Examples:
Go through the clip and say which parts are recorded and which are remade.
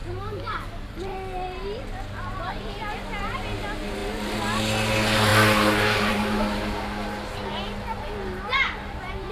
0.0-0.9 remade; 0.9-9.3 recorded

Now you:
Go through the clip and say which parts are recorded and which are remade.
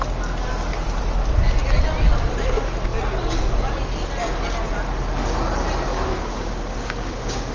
0.0-5.9 recorded; 5.9-7.5 remade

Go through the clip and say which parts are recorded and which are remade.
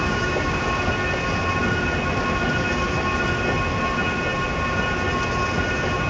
0.0-0.6 remade; 0.6-6.1 recorded